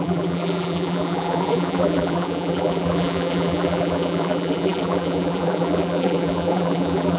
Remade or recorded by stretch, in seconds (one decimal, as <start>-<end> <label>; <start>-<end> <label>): 0.0-7.2 remade